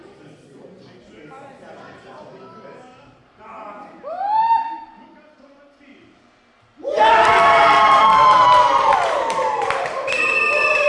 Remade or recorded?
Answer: remade